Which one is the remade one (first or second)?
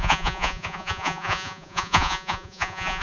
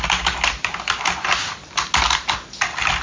first